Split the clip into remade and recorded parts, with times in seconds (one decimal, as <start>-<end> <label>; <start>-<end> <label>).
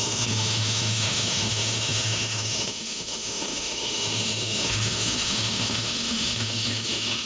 0.0-7.3 remade